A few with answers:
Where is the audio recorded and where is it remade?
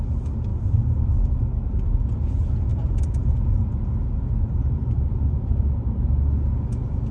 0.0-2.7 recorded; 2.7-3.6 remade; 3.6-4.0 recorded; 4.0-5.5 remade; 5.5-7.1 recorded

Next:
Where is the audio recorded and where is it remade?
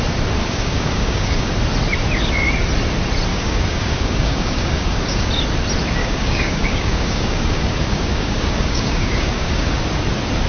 0.0-0.4 recorded; 0.4-1.5 remade; 1.5-3.3 recorded; 3.3-5.3 remade; 5.3-6.0 recorded; 6.0-9.8 remade; 9.8-10.5 recorded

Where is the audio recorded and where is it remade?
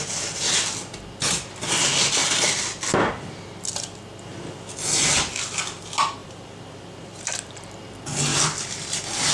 0.0-2.2 recorded; 2.2-3.1 remade; 3.1-6.2 recorded; 6.2-7.8 remade; 7.8-8.3 recorded; 8.3-9.3 remade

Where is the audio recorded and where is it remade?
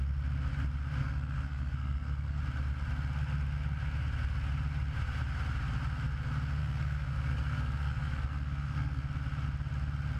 0.0-1.0 recorded; 1.0-2.4 remade; 2.4-6.6 recorded; 6.6-9.0 remade; 9.0-10.2 recorded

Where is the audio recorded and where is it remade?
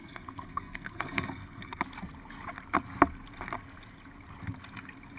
0.0-1.8 remade; 1.8-5.2 recorded